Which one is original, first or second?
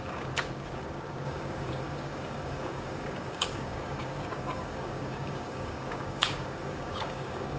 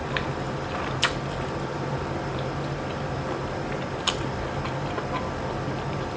second